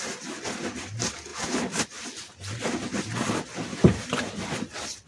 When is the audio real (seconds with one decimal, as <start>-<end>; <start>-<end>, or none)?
0.0-1.3; 2.7-3.7; 4.6-5.1